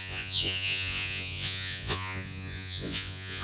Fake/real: fake